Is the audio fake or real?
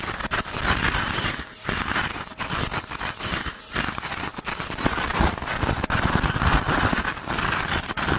real